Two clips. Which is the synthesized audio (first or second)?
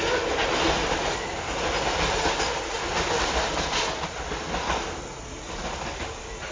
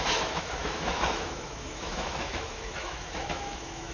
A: second